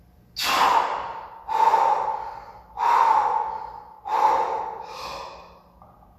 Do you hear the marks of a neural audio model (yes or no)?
no